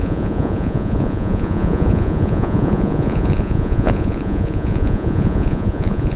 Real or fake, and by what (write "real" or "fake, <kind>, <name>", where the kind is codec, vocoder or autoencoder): fake, vocoder, Vocos